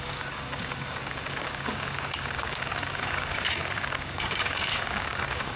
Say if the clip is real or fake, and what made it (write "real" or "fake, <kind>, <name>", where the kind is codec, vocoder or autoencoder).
fake, codec, DAC